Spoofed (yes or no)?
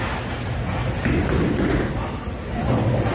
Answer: no